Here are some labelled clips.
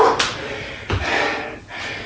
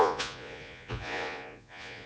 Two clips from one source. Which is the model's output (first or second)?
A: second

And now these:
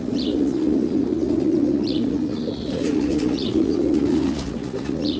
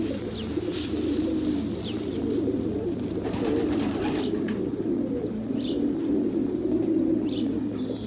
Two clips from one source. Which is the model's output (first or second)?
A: first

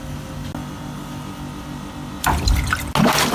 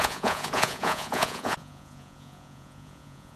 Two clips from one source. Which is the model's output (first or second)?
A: second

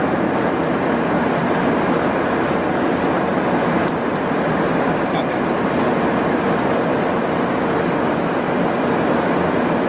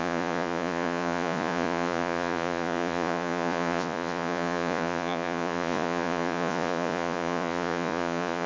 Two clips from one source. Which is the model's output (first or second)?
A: second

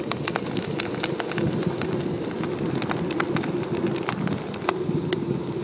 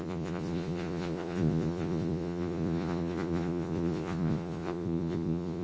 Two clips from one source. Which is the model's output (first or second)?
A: second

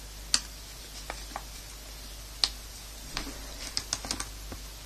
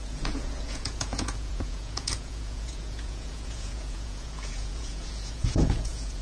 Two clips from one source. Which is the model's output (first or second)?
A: second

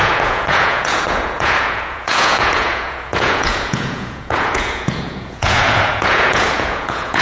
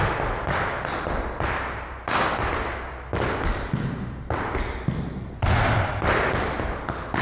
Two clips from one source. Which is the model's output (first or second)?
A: first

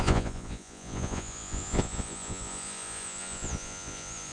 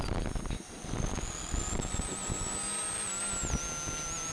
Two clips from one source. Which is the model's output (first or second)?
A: first